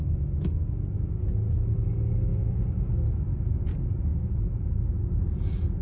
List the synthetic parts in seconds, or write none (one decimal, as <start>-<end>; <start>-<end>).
0.0-0.8; 2.3-2.9